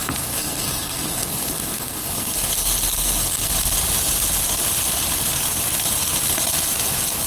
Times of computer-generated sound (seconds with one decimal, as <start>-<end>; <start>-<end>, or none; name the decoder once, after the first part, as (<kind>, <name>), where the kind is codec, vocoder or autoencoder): 0.0-3.5 (codec, SNAC)